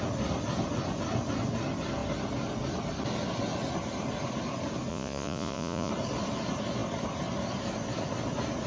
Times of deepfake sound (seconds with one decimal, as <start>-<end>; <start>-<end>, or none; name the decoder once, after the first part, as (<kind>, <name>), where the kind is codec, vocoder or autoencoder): 4.9-5.9 (vocoder, Vocos)